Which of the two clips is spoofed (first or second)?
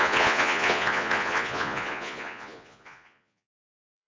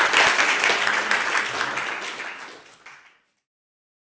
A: first